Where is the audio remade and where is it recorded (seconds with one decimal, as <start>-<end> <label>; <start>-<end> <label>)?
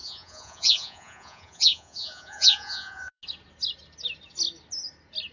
0.0-3.2 remade; 3.2-5.3 recorded